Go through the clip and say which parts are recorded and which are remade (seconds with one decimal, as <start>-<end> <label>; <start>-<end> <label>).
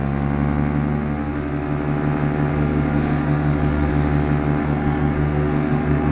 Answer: 0.0-2.5 recorded; 2.5-3.9 remade; 3.9-4.6 recorded; 4.6-6.1 remade